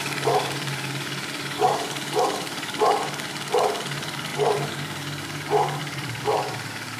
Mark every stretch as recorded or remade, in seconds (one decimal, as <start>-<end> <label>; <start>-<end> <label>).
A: 0.0-7.0 remade